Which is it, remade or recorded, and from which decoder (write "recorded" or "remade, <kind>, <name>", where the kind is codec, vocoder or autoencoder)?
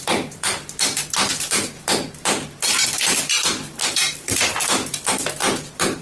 remade, vocoder, BigVGAN v2